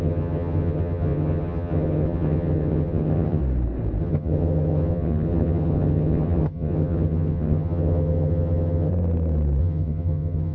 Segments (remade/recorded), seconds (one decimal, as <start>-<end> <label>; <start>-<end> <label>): 0.0-3.4 remade; 3.4-4.0 recorded; 4.0-8.9 remade; 8.9-9.6 recorded; 9.6-10.5 remade